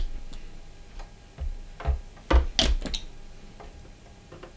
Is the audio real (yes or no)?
yes